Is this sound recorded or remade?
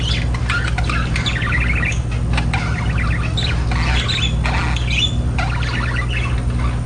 recorded